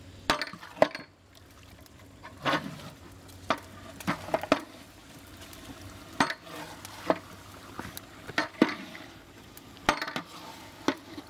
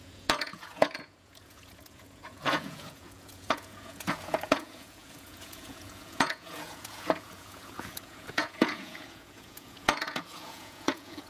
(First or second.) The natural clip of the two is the first